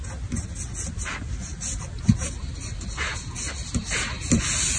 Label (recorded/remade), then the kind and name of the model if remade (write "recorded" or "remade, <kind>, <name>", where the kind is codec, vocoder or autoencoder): recorded